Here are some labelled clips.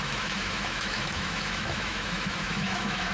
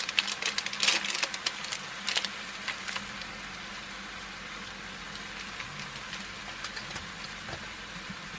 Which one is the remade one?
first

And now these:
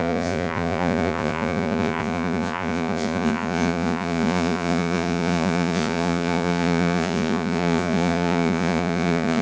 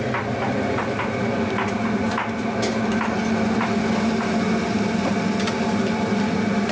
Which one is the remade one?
first